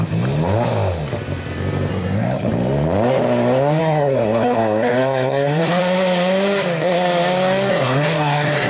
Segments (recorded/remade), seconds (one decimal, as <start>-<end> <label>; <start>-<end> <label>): 0.0-1.9 recorded; 1.9-2.5 remade; 2.5-3.8 recorded; 3.8-5.8 remade; 5.8-7.7 recorded; 7.7-8.7 remade